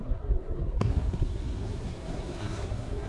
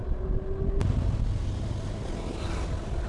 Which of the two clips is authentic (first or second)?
second